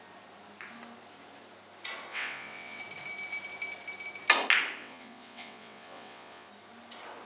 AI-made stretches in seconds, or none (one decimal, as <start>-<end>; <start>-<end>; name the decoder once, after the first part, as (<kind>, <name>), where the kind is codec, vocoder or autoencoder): 2.1-2.8 (vocoder, WaveNeXt); 4.8-6.5